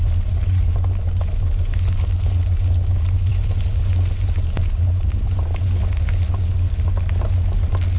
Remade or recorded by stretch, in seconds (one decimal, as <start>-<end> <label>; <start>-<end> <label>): 0.0-8.0 recorded